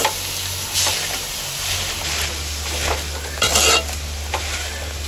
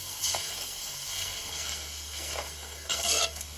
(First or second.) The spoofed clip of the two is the second